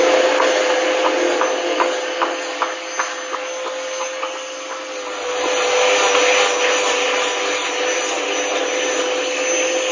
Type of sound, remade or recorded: recorded